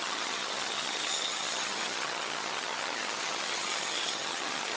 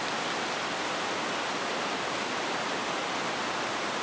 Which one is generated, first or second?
first